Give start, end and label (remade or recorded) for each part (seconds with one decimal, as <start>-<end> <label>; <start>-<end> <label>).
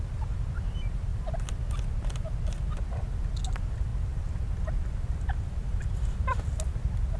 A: 0.0-7.2 recorded